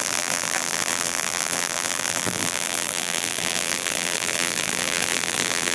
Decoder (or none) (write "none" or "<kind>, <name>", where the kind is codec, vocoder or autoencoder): vocoder, BigVGAN v2